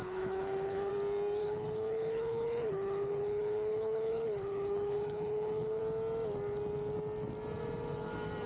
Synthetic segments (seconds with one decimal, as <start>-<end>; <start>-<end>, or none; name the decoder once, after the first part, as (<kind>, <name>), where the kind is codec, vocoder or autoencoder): 0.0-0.9 (codec, HILCodec); 1.4-5.8